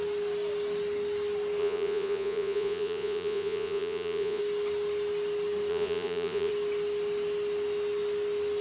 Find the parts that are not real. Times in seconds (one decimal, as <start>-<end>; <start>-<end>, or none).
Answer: 1.6-4.4; 5.7-6.5